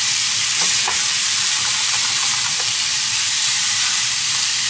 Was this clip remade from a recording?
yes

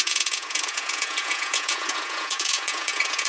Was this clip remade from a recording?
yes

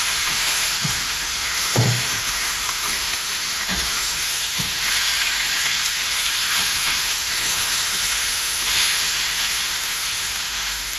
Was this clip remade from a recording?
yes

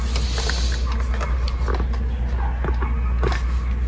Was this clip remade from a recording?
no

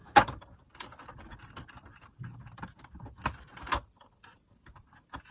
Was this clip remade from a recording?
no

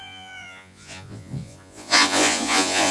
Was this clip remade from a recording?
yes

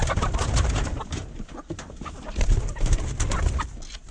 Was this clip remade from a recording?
no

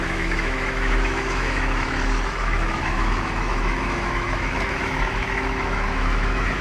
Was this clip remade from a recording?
yes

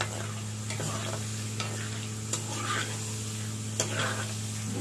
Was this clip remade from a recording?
no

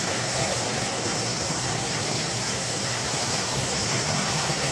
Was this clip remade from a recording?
yes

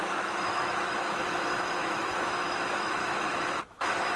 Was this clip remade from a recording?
yes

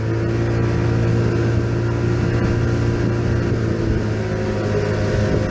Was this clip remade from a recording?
no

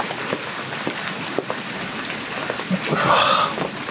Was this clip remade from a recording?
yes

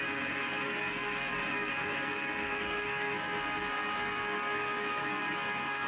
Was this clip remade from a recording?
yes